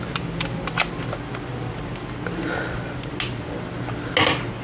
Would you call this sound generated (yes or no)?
no